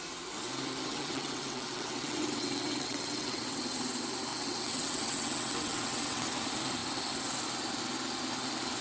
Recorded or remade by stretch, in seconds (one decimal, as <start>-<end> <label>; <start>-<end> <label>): 0.0-0.9 recorded; 0.9-3.6 remade; 3.6-4.3 recorded; 4.3-6.3 remade; 6.3-8.8 recorded